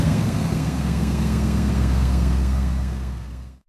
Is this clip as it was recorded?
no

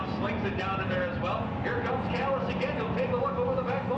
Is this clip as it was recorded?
yes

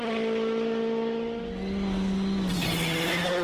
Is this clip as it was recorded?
yes